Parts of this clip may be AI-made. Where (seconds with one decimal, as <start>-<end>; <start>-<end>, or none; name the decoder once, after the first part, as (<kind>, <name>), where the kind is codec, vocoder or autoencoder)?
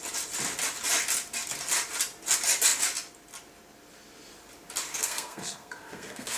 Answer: 4.9-6.4 (codec, SNAC)